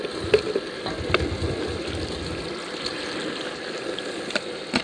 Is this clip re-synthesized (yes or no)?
no